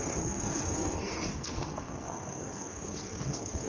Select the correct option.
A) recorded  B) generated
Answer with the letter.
B